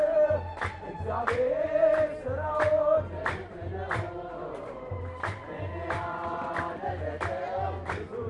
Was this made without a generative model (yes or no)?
yes